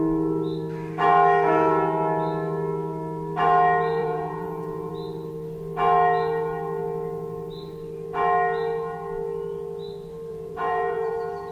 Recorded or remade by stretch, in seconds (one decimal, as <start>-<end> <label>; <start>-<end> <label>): 0.0-4.0 recorded; 4.0-4.9 remade; 4.9-10.3 recorded; 10.3-11.1 remade; 11.1-11.5 recorded